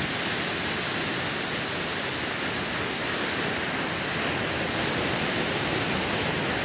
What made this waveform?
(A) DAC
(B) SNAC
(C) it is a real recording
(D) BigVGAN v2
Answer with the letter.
C